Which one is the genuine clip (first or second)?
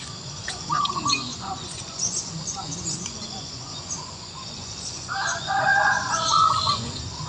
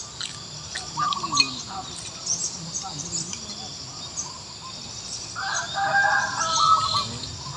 second